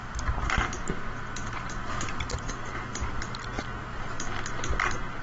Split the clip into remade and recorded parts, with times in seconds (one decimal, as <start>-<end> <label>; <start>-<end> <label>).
0.0-5.2 recorded